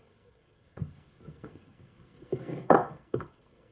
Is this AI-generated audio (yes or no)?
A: yes